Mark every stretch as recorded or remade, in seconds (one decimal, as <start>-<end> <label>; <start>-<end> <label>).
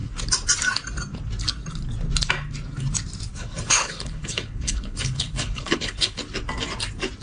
0.0-3.3 recorded; 3.3-6.2 remade; 6.2-7.2 recorded